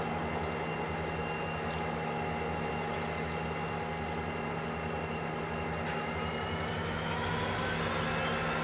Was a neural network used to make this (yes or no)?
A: no